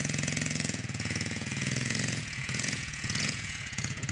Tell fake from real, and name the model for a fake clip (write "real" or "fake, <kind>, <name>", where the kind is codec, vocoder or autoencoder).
fake, vocoder, Vocos